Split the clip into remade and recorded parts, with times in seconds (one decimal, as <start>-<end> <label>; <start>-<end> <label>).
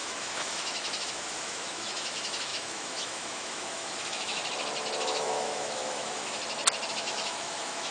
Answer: 0.0-4.4 remade; 4.4-5.0 recorded; 5.0-6.4 remade; 6.4-6.9 recorded; 6.9-7.9 remade